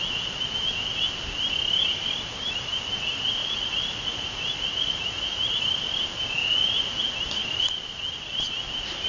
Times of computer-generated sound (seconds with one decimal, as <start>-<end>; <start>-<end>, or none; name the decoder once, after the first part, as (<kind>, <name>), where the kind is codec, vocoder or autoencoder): 3.4-5.6 (vocoder, Vocos); 6.4-7.0